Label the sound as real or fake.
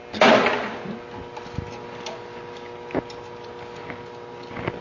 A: real